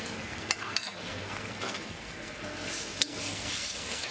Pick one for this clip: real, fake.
fake